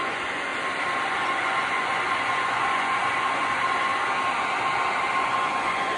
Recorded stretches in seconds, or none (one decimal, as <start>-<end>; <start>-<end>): 0.5-1.1; 3.9-5.2